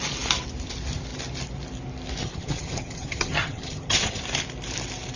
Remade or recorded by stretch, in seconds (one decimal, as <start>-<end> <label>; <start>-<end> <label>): 0.0-2.2 recorded; 2.2-4.2 remade; 4.2-5.2 recorded